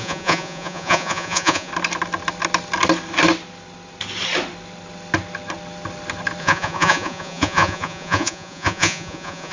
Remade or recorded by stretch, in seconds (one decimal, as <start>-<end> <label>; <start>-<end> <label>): 0.0-1.7 remade; 1.7-6.4 recorded; 6.4-9.5 remade